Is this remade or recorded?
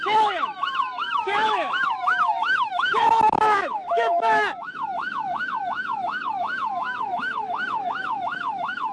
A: remade